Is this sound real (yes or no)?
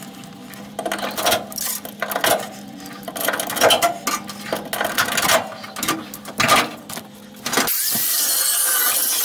yes